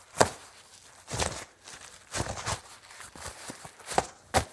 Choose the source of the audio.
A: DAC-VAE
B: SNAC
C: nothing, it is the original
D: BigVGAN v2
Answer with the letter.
C